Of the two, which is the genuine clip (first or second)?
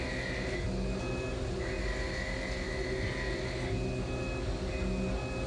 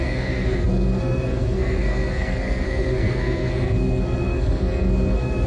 first